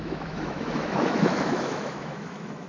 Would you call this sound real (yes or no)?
no